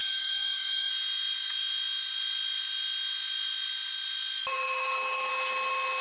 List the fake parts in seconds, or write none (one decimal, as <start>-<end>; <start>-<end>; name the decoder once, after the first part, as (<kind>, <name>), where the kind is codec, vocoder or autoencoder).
0.0-0.9 (codec, DAC); 4.5-5.3